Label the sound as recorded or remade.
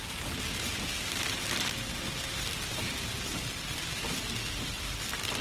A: recorded